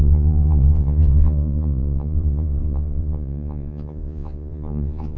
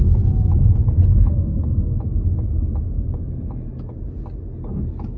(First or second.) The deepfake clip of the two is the first